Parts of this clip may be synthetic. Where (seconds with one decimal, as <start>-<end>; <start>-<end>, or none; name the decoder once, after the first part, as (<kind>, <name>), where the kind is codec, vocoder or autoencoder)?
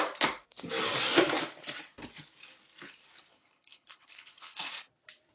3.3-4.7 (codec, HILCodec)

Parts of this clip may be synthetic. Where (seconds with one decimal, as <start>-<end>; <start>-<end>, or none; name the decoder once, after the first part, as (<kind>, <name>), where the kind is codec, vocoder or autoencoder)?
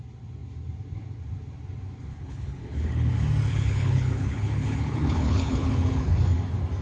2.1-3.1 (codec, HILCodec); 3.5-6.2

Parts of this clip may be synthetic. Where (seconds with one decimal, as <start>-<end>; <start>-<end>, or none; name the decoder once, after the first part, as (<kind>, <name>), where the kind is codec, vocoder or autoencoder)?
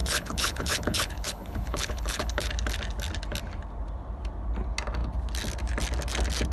0.0-2.5 (codec, HILCodec)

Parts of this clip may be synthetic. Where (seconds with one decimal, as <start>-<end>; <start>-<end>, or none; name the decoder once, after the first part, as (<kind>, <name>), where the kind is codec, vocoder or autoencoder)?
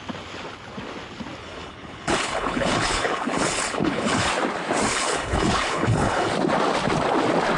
1.4-4.3 (codec, HILCodec); 4.9-6.3